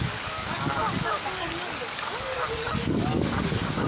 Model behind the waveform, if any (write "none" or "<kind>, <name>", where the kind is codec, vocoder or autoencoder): codec, DAC